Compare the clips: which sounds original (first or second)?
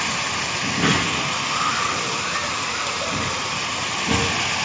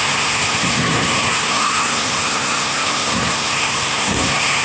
first